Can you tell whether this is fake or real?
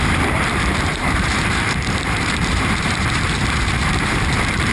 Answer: fake